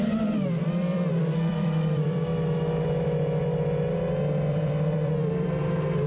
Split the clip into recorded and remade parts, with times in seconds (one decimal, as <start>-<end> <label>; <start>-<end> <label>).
0.0-2.3 remade; 2.3-4.5 recorded; 4.5-6.1 remade